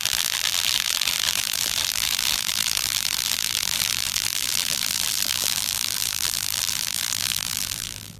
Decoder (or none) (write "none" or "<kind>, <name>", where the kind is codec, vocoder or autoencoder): vocoder, BigVGAN v2